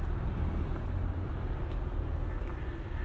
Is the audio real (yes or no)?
yes